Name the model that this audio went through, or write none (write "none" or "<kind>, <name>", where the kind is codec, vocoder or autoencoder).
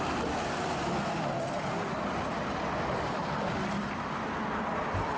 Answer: vocoder, BigVGAN v2